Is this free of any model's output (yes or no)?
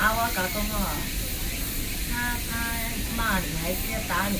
yes